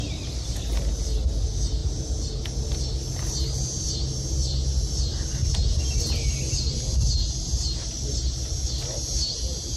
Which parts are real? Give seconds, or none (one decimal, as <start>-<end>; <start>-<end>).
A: 0.0-9.8